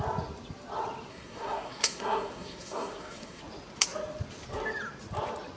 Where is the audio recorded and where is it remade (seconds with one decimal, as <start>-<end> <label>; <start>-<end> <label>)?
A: 0.0-1.1 recorded; 1.1-3.4 remade; 3.4-5.6 recorded